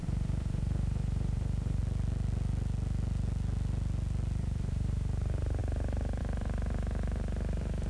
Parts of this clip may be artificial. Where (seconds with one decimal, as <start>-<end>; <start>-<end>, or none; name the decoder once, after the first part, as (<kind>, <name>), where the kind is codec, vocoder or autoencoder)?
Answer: 0.0-1.8 (vocoder, BigVGAN v2); 4.4-7.9

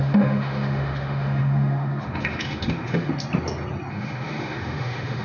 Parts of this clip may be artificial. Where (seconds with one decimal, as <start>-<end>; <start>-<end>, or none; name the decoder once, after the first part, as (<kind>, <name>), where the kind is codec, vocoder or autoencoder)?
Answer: 0.0-3.1 (autoencoder, DAC-VAE); 3.9-5.2

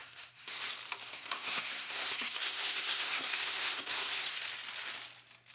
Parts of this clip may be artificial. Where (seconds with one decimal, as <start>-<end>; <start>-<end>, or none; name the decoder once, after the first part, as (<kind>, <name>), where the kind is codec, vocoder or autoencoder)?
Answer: 0.0-0.6 (codec, SNAC); 1.1-4.4